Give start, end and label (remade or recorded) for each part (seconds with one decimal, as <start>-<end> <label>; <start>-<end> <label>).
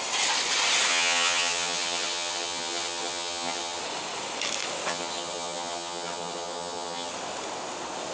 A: 0.0-0.9 recorded; 0.9-3.8 remade; 3.8-4.9 recorded; 4.9-7.1 remade; 7.1-8.1 recorded